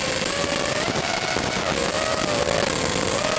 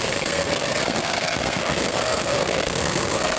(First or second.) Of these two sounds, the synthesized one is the second